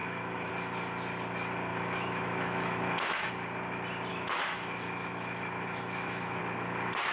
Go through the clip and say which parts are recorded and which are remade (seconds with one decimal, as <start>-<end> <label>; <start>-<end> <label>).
0.0-0.5 remade; 0.5-1.7 recorded; 1.7-3.3 remade; 3.3-4.1 recorded; 4.1-6.4 remade; 6.4-7.1 recorded